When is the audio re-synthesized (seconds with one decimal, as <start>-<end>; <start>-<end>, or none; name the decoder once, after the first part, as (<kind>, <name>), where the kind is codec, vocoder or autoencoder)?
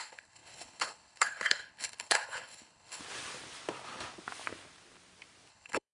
0.0-3.0 (codec, HILCodec); 5.5-5.9